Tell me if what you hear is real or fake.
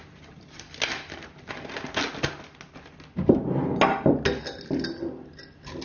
real